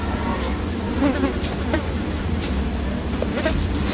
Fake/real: real